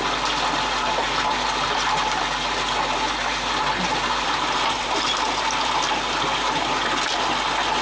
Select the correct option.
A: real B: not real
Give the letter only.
A